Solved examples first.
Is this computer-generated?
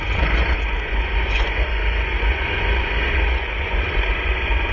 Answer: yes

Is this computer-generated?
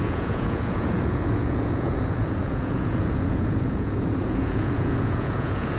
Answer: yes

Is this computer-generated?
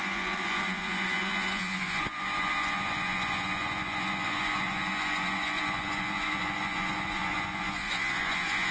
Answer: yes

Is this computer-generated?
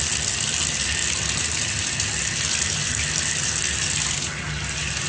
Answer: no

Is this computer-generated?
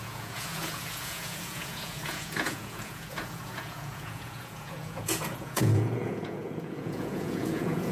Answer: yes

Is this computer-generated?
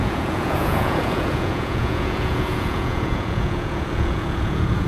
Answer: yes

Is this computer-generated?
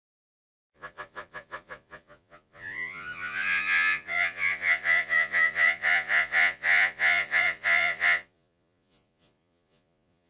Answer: yes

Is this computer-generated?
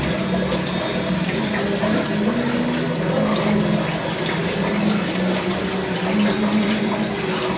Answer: no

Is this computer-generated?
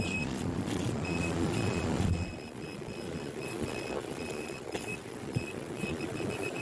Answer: yes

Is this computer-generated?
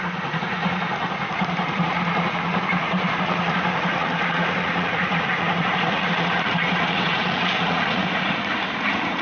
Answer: yes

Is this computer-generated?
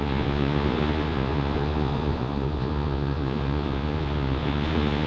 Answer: yes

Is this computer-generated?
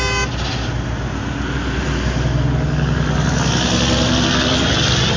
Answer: no